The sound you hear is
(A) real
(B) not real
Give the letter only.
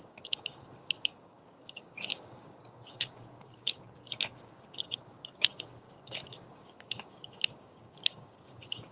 B